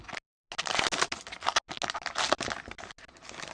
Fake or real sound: real